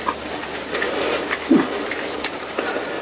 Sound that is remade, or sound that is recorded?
recorded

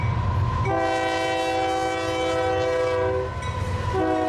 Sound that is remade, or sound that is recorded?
recorded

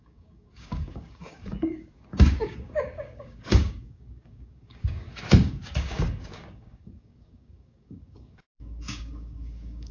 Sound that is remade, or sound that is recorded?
remade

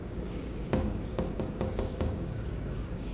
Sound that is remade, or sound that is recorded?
remade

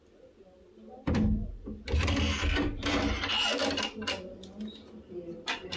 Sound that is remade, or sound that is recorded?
recorded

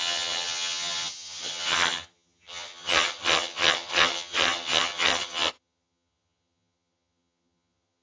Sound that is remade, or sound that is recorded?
remade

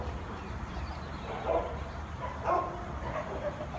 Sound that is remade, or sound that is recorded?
remade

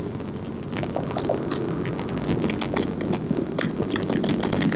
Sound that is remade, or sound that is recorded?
recorded